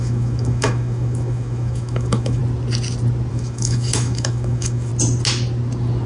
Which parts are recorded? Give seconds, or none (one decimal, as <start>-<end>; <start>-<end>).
2.4-3.3; 4.9-6.1